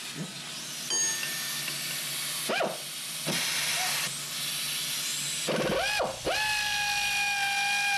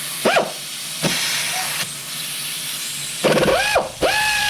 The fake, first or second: second